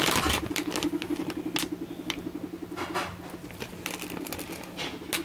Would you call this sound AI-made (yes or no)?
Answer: no